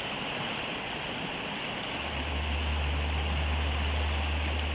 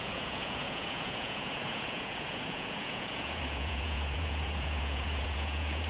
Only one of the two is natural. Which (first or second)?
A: first